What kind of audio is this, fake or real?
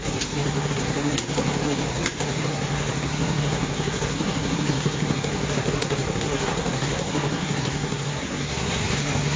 fake